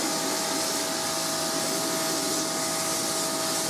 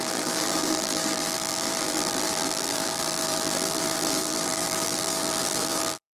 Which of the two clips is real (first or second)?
first